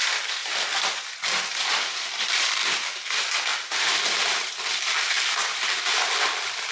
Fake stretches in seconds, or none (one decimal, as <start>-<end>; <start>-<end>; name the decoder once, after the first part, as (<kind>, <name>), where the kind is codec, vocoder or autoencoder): 0.0-6.7 (vocoder, BigVGAN v2)